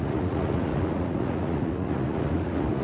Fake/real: fake